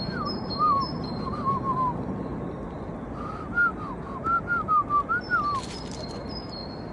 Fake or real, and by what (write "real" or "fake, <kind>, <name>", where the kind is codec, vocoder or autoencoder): real